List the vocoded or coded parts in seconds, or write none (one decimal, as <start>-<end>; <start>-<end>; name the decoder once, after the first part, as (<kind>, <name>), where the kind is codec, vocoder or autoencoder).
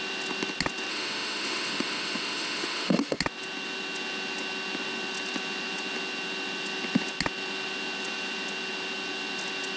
0.9-3.2 (autoencoder, DAC-VAE)